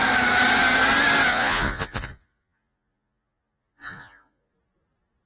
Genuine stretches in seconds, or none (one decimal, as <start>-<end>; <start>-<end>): 0.0-1.3; 4.5-5.3